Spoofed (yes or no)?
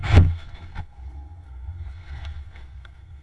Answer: yes